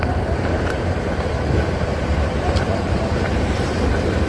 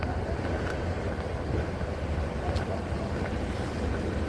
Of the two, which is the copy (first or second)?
first